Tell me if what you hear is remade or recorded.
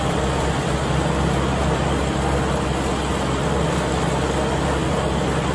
recorded